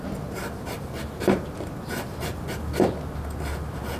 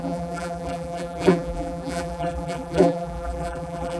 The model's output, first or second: second